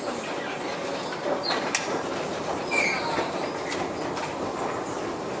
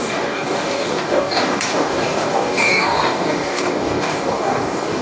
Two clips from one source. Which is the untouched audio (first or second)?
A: first